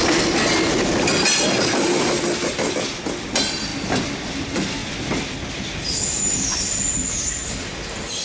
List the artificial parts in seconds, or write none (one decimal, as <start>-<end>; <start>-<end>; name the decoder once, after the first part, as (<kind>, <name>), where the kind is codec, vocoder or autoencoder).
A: none